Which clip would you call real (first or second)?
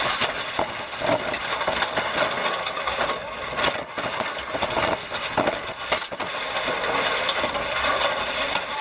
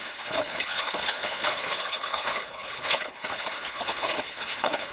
first